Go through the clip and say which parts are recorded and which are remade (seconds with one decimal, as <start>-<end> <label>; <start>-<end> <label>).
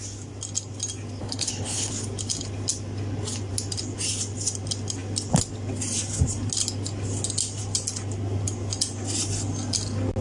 0.0-1.2 recorded; 1.2-1.9 remade; 1.9-10.2 recorded